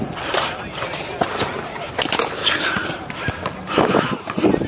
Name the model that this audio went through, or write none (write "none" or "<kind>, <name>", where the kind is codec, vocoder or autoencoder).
none